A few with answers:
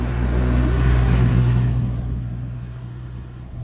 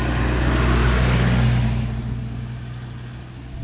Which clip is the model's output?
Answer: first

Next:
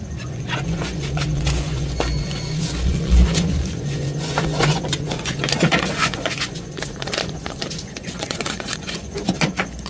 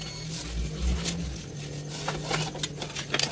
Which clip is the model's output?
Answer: first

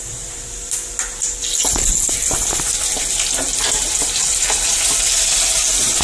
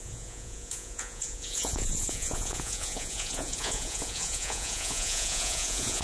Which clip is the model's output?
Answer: second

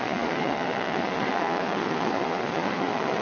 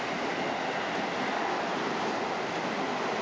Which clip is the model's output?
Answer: first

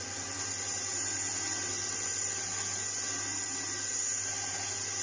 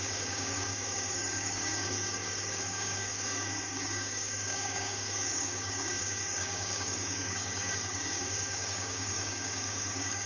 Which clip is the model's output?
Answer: second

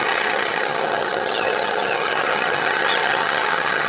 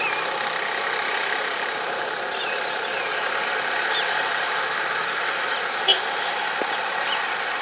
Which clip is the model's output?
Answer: first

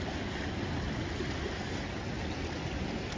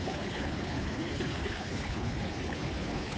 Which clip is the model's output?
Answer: second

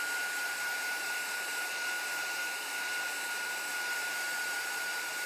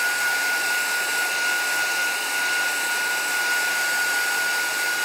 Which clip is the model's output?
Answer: first